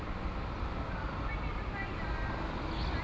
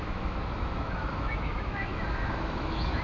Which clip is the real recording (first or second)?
first